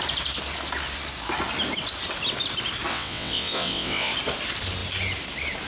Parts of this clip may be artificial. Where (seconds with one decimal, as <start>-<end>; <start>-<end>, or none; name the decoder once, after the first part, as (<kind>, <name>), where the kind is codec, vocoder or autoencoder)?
2.9-4.1 (vocoder, WaveNeXt)